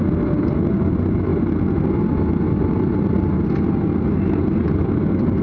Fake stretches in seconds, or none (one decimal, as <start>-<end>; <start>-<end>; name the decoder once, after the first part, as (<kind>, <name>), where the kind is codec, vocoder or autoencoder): none